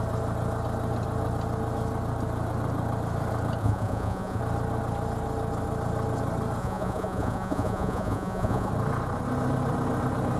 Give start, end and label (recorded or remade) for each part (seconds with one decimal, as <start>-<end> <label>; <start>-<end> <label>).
0.0-3.6 recorded; 3.6-4.4 remade; 4.4-6.6 recorded; 6.6-8.7 remade; 8.7-10.4 recorded